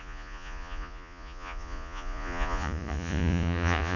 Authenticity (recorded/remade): remade